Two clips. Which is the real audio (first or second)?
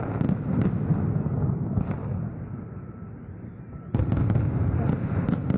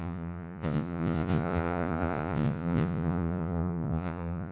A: first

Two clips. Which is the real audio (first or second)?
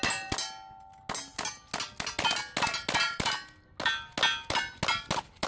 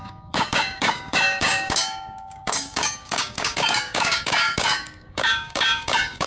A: first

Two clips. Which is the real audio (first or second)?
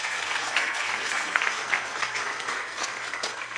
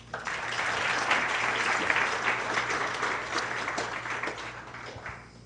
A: second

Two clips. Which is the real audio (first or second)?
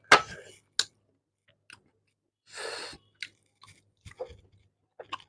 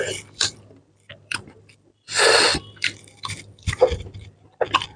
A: first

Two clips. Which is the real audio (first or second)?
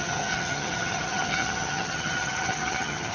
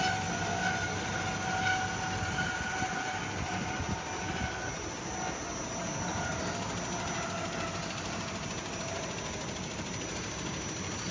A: second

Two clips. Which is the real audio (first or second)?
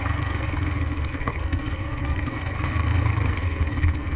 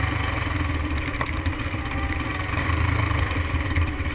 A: second